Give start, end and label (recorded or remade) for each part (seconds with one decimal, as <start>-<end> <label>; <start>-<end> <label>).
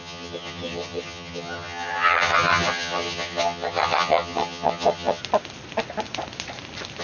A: 0.0-5.2 remade; 5.2-7.0 recorded